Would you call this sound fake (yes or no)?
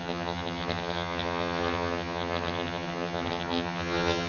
yes